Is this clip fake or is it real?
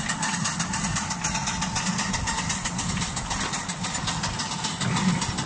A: real